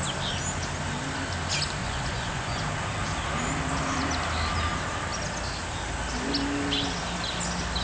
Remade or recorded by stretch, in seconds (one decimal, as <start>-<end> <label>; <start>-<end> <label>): 0.0-1.8 recorded; 1.8-2.6 remade; 2.6-7.8 recorded